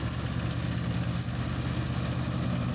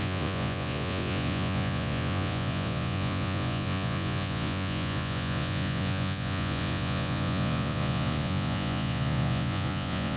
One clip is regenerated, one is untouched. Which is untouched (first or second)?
first